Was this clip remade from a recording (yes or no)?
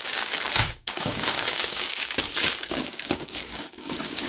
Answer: yes